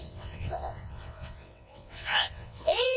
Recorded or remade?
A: remade